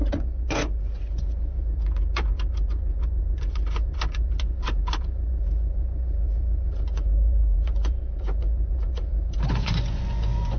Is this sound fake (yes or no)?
yes